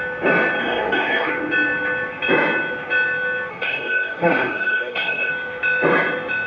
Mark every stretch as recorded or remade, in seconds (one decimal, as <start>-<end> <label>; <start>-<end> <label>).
0.0-0.6 recorded; 0.6-1.3 remade; 1.3-3.5 recorded; 3.5-5.3 remade; 5.3-6.5 recorded